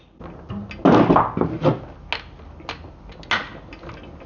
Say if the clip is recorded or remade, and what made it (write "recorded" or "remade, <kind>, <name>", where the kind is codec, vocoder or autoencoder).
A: recorded